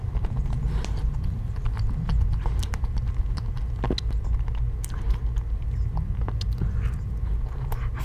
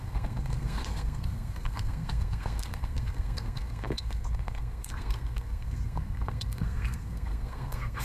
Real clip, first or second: first